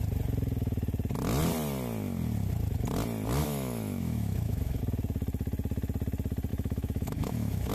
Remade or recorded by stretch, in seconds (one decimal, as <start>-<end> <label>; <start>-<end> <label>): 0.0-3.4 recorded; 3.4-4.8 remade; 4.8-6.5 recorded; 6.5-7.7 remade